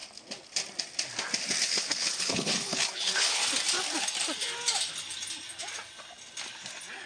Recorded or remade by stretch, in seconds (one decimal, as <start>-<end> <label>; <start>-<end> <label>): 0.0-1.6 recorded; 1.6-3.4 remade; 3.4-7.1 recorded

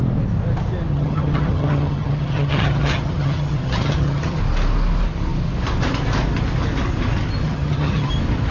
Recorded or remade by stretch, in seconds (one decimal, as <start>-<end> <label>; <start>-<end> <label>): 0.0-0.9 recorded; 0.9-4.4 remade; 4.4-7.4 recorded; 7.4-8.1 remade; 8.1-8.5 recorded

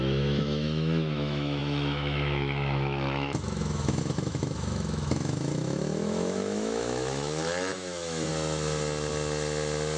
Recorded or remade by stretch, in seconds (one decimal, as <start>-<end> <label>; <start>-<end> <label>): 0.0-8.3 remade; 8.3-10.0 recorded

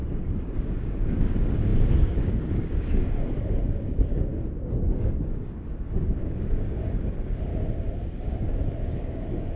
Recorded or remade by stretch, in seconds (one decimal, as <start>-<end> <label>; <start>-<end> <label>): 0.0-4.3 remade; 4.3-4.8 recorded; 4.8-7.5 remade; 7.5-8.2 recorded; 8.2-9.6 remade

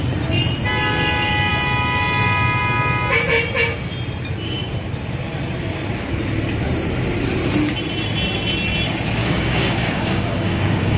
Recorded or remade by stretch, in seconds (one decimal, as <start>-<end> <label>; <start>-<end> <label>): 0.0-9.2 recorded; 9.2-11.0 remade

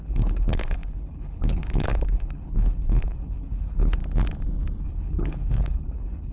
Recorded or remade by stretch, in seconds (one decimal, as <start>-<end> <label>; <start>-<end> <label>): 0.0-4.0 remade; 4.0-4.8 recorded; 4.8-6.3 remade

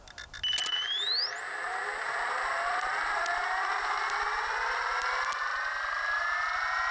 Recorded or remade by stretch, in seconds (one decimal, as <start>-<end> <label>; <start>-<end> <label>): 0.0-6.9 recorded